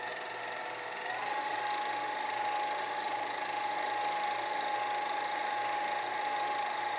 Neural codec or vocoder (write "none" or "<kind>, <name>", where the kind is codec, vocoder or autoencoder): none